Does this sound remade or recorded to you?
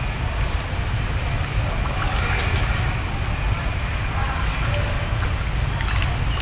recorded